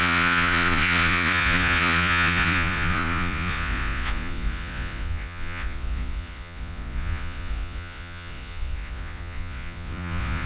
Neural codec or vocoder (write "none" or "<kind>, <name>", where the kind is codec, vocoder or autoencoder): vocoder, Vocos